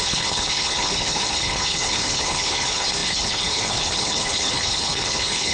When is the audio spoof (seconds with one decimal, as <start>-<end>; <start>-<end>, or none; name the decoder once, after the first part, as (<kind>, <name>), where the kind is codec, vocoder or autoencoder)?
0.0-5.5 (codec, HILCodec)